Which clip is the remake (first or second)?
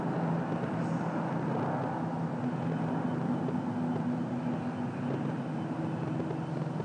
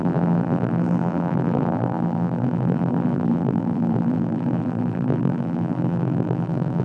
second